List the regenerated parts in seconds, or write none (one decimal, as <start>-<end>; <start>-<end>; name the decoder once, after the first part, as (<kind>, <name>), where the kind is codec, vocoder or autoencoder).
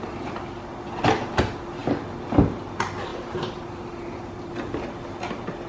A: 3.1-4.5 (vocoder, BigVGAN v2)